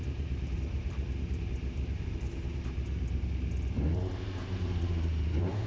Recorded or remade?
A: remade